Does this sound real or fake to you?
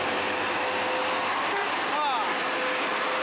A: real